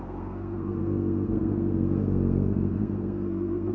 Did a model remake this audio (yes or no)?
yes